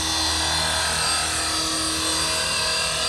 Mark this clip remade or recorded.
recorded